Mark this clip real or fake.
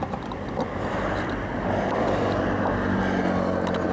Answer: real